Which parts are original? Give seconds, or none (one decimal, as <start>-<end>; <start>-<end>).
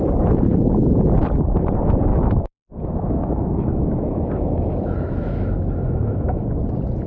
0.0-2.1; 6.4-7.1